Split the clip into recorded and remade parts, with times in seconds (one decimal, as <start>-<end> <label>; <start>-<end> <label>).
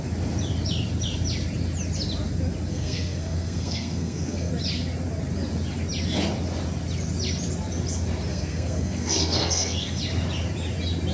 0.0-2.7 recorded; 2.7-4.5 remade; 4.5-8.3 recorded; 8.3-10.0 remade; 10.0-11.1 recorded